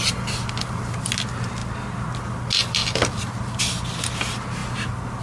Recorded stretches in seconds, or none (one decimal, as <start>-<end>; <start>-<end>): 0.0-5.2